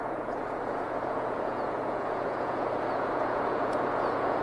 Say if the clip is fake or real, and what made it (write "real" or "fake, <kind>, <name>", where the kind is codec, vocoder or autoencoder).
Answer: fake, vocoder, Vocos